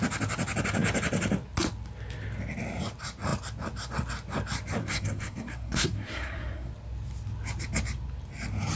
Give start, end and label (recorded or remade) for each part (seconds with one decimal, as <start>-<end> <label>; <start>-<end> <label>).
0.0-4.8 recorded; 4.8-6.7 remade; 6.7-8.8 recorded